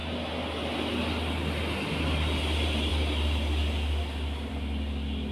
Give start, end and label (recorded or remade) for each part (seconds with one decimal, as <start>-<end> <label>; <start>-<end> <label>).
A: 0.0-5.3 recorded